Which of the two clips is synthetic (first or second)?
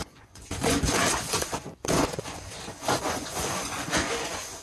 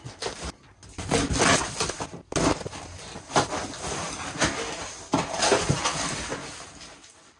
first